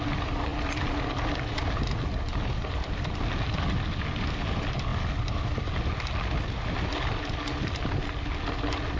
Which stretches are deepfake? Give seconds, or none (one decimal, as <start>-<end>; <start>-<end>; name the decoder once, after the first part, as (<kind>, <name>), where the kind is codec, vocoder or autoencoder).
none